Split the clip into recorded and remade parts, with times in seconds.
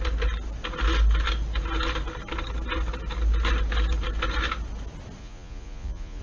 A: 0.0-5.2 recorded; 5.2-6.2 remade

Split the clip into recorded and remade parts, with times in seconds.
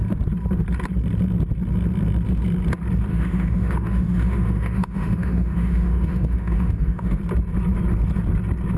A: 0.0-3.1 recorded; 3.1-7.2 remade; 7.2-8.8 recorded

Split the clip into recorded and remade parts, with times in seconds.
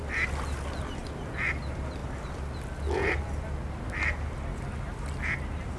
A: 0.0-5.8 recorded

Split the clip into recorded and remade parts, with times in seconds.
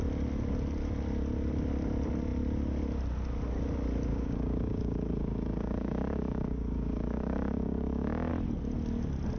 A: 0.0-4.1 recorded; 4.1-8.3 remade; 8.3-9.4 recorded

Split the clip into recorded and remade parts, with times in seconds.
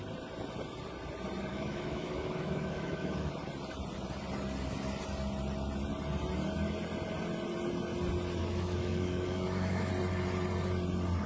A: 0.0-1.5 recorded; 1.5-3.3 remade; 3.3-8.4 recorded; 8.4-9.9 remade; 9.9-11.3 recorded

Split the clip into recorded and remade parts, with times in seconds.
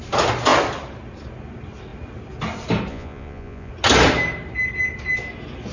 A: 0.0-2.9 recorded; 2.9-3.7 remade; 3.7-5.7 recorded